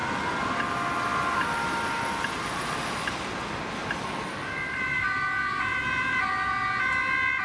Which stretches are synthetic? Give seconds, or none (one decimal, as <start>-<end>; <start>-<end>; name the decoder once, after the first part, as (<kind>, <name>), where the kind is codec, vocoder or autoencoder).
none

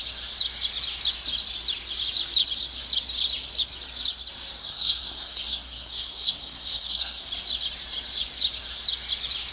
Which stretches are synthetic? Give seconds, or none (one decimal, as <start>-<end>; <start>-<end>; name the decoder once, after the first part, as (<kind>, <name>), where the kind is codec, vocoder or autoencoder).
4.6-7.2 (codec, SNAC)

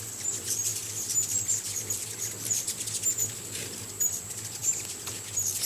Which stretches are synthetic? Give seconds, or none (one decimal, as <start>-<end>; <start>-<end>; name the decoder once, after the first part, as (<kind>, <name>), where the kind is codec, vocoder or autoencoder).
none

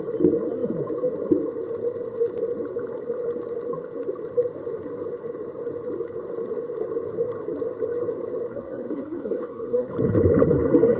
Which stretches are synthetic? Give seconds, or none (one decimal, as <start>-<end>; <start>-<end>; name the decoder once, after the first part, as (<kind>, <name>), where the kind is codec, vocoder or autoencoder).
8.5-9.9 (codec, SNAC)

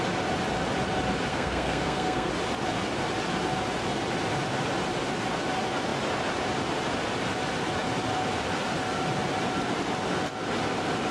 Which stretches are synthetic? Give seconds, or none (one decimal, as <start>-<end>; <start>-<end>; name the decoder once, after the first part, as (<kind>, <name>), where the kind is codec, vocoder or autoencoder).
1.3-2.3 (codec, SNAC)